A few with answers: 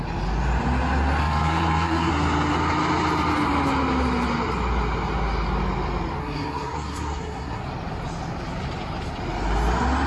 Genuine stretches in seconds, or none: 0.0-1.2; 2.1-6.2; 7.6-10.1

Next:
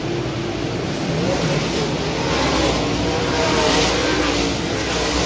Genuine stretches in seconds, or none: 0.0-5.3

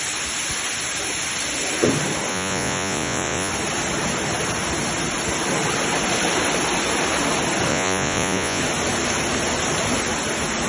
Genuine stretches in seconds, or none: 0.0-2.3; 3.5-7.7; 8.6-10.7

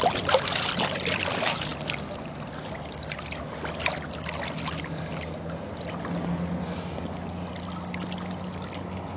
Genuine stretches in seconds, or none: 0.0-9.2

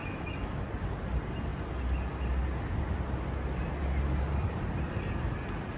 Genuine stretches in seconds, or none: 0.6-5.8

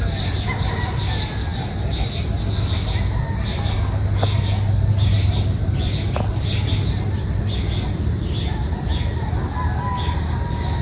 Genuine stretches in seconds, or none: 0.0-10.8

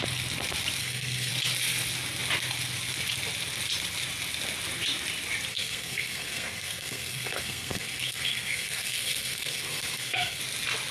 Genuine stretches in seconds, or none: 0.0-0.8; 1.3-5.5; 10.4-10.9

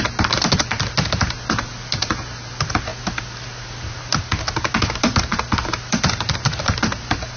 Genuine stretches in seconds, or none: 0.0-7.4